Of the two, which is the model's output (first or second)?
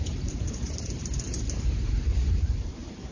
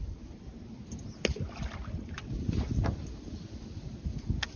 first